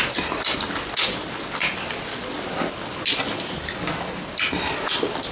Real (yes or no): yes